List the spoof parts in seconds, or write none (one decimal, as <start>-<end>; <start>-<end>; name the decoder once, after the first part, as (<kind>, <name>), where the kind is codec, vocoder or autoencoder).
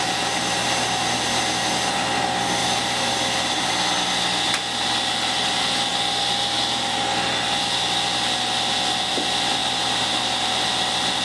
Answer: 2.6-3.5 (vocoder, BigVGAN v2); 9.6-10.5